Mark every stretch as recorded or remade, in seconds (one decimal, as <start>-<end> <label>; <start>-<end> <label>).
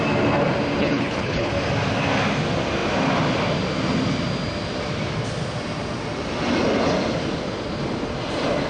0.0-0.8 recorded; 0.8-1.5 remade; 1.5-8.7 recorded